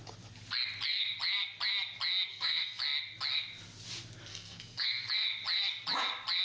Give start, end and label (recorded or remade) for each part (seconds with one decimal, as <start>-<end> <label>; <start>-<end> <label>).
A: 0.0-2.3 recorded; 2.3-2.8 remade; 2.8-4.3 recorded; 4.3-5.1 remade; 5.1-6.4 recorded